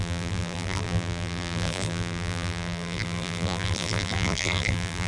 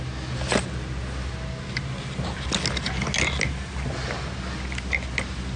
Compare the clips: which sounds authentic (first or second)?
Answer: second